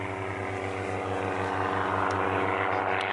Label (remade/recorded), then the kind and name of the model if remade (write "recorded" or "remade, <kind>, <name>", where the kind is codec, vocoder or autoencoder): recorded